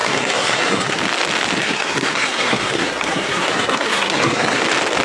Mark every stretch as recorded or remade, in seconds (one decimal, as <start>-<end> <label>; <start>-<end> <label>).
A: 0.0-1.0 remade; 1.0-1.6 recorded; 1.6-4.6 remade; 4.6-5.0 recorded